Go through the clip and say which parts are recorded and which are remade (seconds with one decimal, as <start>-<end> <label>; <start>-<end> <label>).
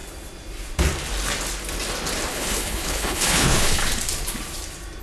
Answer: 0.0-2.3 recorded; 2.3-3.8 remade; 3.8-5.0 recorded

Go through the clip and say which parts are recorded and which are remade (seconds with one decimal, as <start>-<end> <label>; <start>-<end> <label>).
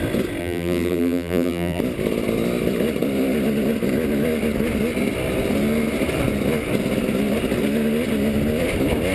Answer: 0.0-0.4 recorded; 0.4-1.8 remade; 1.8-9.1 recorded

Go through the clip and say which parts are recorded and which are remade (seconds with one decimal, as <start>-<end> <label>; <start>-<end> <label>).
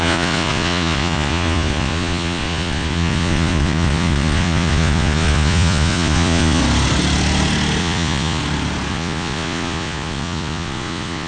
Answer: 0.0-6.6 remade; 6.6-7.8 recorded; 7.8-8.4 remade; 8.4-8.9 recorded; 8.9-11.3 remade